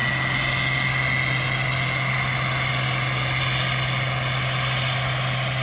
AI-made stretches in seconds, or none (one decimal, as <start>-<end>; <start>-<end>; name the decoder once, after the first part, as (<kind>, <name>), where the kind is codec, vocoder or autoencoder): none